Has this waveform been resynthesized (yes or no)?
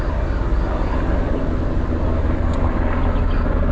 no